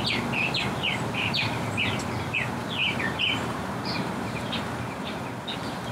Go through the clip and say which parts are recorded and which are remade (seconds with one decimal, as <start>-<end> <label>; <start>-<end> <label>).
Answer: 0.0-0.9 recorded; 0.9-2.1 remade; 2.1-2.8 recorded; 2.8-5.3 remade; 5.3-5.9 recorded